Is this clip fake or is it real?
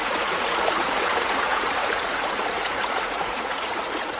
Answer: fake